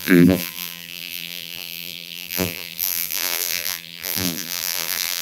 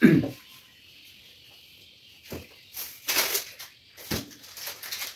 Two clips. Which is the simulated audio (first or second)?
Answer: first